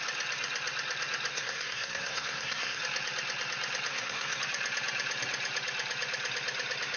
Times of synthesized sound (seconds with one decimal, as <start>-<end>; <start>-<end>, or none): 1.3-2.8; 3.9-4.4